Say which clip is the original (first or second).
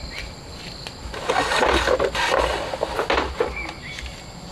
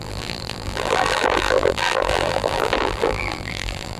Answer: first